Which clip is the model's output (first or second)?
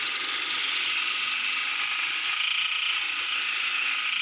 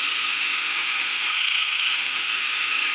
second